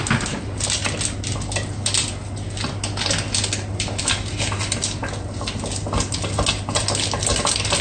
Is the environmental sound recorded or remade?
recorded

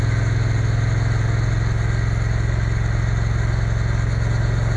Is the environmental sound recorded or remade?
recorded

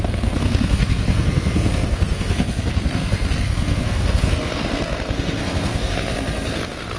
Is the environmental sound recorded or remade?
remade